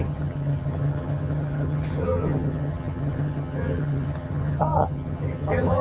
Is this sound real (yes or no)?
no